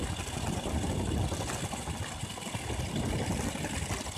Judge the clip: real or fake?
real